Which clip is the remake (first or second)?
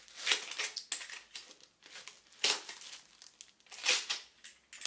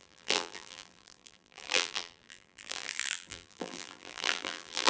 second